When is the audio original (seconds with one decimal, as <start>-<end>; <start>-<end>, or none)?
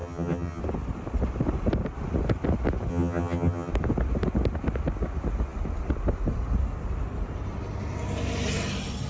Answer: 0.6-2.9; 3.7-9.1